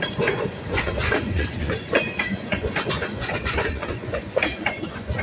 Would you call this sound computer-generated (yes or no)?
yes